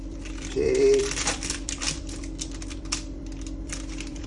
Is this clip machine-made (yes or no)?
yes